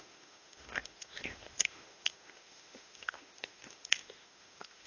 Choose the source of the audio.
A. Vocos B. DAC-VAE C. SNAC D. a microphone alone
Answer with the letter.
B